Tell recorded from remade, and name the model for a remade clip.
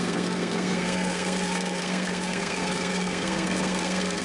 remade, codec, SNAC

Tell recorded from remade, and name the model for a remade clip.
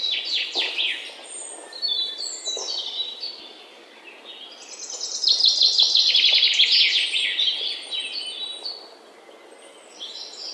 recorded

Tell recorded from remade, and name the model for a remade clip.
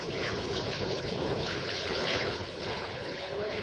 remade, codec, HILCodec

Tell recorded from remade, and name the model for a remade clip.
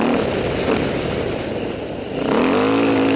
recorded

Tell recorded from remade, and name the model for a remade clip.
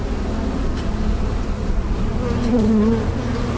recorded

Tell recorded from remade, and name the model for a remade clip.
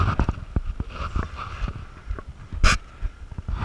recorded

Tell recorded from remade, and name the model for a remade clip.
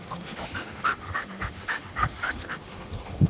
remade, autoencoder, DAC-VAE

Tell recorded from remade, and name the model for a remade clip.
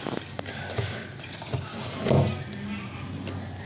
recorded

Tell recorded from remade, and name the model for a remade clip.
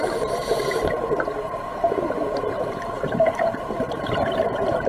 remade, vocoder, BigVGAN v2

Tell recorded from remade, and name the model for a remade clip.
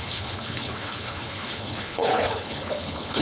remade, codec, HILCodec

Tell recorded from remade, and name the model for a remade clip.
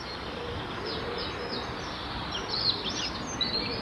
recorded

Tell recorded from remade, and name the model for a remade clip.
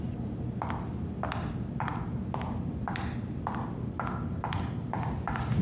recorded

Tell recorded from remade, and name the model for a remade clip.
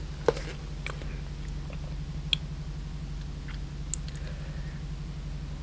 recorded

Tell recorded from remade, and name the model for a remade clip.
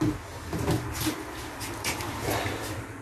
recorded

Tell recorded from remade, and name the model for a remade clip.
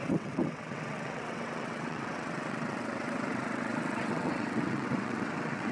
remade, vocoder, WaveNeXt